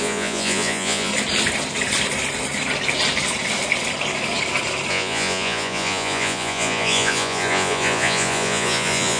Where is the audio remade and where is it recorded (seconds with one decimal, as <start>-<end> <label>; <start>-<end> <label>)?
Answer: 0.0-1.1 remade; 1.1-4.9 recorded; 4.9-9.2 remade